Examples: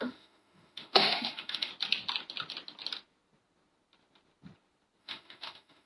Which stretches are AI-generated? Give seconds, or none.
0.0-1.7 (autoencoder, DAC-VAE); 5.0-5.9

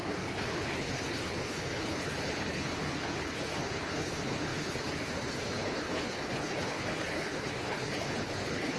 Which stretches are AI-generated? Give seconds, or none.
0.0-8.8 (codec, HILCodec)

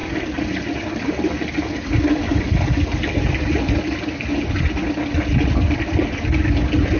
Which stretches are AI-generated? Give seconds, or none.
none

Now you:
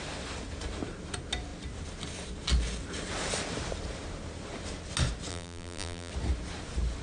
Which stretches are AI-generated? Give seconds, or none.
5.3-6.1 (vocoder, BigVGAN v2)